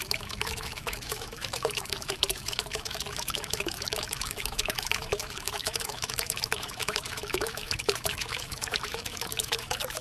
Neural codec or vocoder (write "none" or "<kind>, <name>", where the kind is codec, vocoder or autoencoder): autoencoder, DAC-VAE